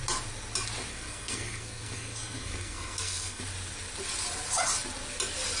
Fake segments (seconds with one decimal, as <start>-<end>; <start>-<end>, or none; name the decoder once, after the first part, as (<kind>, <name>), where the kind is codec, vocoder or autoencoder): 0.9-3.4 (codec, SNAC)